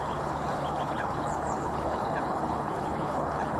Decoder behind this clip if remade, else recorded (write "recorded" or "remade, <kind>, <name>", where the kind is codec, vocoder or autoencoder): remade, codec, HILCodec